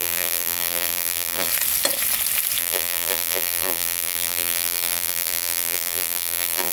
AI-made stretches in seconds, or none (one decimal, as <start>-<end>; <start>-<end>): 0.0-1.5; 2.6-6.7

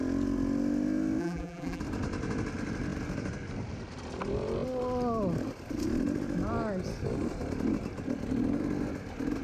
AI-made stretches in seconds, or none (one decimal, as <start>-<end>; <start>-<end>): 1.2-1.8

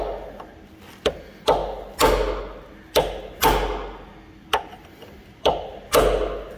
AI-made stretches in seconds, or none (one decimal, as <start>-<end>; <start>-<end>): none

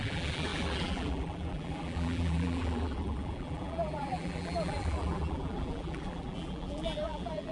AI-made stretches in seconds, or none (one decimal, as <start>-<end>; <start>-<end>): 0.0-7.5

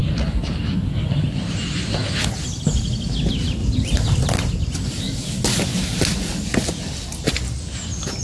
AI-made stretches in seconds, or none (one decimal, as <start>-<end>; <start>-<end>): 0.0-0.6; 3.6-4.3; 5.7-6.8

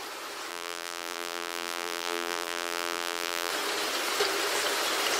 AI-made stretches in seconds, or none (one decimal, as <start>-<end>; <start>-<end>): 0.5-3.5

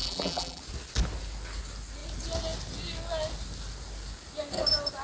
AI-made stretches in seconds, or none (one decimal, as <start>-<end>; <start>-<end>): 0.0-0.6

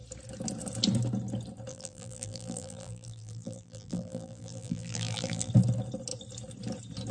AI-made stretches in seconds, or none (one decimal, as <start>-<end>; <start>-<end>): 1.7-5.5